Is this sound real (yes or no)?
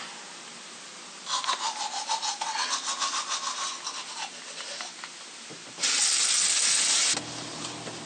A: yes